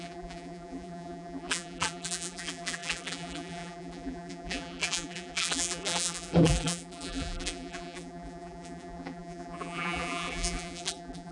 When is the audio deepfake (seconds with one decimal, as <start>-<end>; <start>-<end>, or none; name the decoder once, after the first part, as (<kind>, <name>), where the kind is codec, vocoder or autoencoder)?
0.0-11.3 (vocoder, BigVGAN v2)